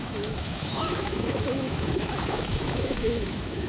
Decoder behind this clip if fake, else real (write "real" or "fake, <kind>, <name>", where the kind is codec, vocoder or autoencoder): fake, autoencoder, DAC-VAE